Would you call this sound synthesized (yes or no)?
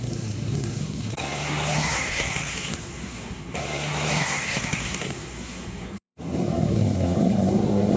yes